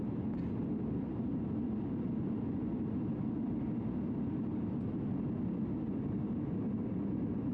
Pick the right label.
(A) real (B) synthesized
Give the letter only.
A